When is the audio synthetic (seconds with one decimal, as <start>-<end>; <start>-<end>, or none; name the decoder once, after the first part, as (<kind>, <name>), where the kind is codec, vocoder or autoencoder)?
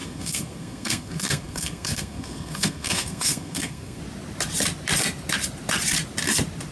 0.0-4.0 (codec, SNAC)